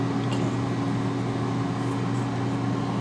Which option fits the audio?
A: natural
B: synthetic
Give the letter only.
A